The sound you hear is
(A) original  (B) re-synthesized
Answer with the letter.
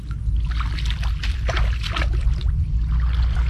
A